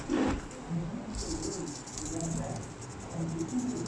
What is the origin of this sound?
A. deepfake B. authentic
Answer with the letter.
B